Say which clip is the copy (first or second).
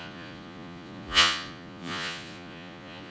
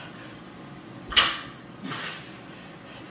first